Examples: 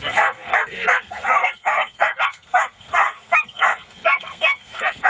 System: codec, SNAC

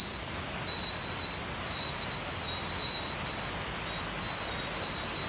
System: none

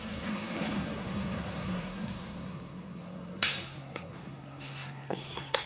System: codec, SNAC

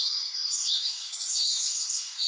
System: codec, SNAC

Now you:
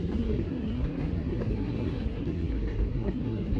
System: codec, SNAC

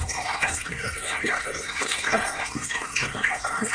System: codec, SNAC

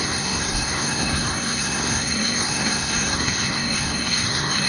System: codec, SNAC